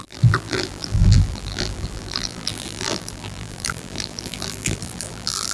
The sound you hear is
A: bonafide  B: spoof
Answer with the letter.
B